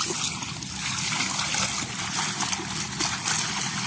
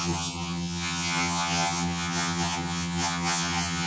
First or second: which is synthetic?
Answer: second